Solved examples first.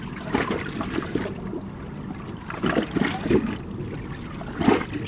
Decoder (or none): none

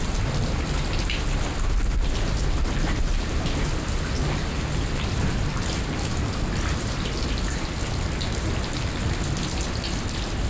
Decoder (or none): none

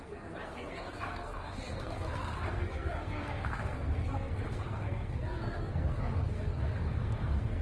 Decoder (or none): codec, SNAC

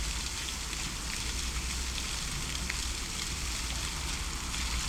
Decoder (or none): none